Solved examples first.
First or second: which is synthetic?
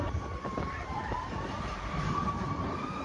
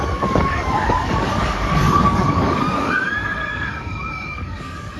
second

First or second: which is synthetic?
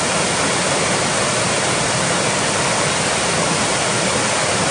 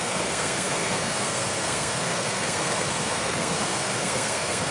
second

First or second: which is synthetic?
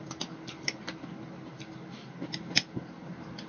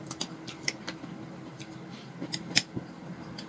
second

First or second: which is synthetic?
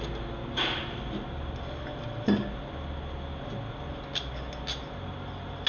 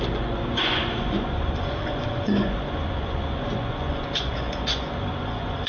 second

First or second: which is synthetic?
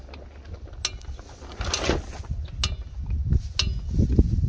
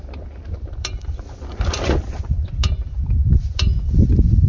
second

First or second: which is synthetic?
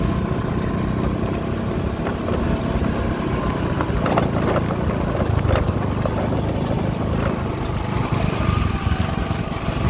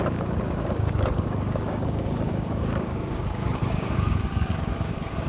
second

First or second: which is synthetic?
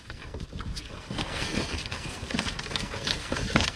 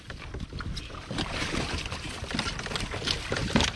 first